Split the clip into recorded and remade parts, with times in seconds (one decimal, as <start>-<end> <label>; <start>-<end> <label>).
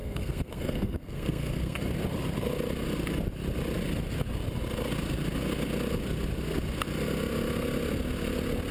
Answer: 0.0-1.8 remade; 1.8-8.7 recorded